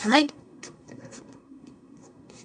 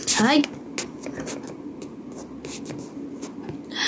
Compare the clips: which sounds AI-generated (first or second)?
first